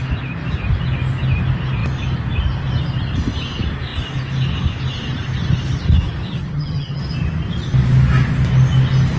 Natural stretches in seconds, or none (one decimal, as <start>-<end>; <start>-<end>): 0.0-6.4; 7.0-9.2